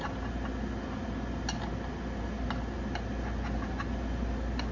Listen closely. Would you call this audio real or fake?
real